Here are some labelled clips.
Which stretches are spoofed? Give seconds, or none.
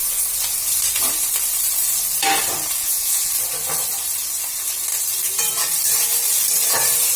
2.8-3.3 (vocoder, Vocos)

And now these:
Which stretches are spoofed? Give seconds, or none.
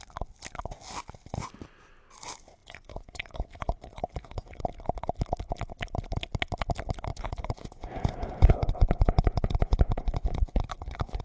2.6-4.6 (vocoder, Vocos); 7.1-11.2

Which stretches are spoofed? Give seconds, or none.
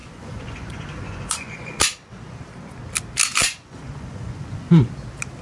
0.0-1.8 (vocoder, Vocos); 3.4-4.9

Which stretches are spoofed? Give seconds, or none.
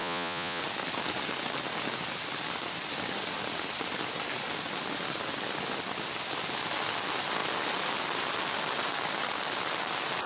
0.0-0.6 (vocoder, Vocos)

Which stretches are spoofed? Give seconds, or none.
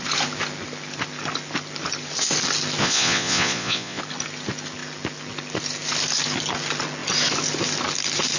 2.8-4.0 (vocoder, Vocos)